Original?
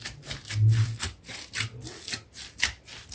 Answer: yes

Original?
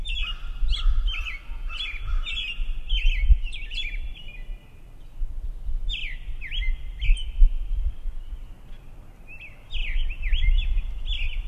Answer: yes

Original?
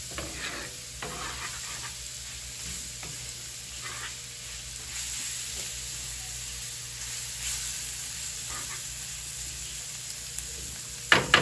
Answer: yes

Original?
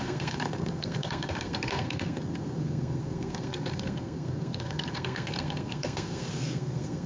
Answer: no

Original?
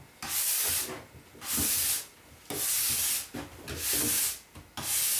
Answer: yes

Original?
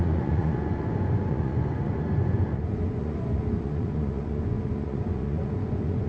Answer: no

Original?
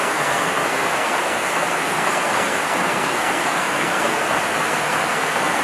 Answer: no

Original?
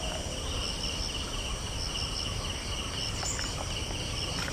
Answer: yes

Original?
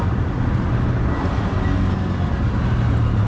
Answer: yes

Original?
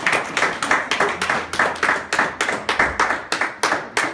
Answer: yes